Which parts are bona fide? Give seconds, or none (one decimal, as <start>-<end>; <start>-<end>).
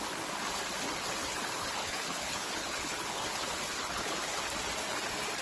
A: 0.0-1.2; 4.4-5.4